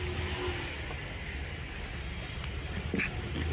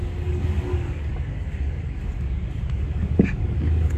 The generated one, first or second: second